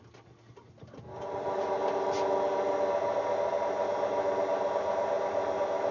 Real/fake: real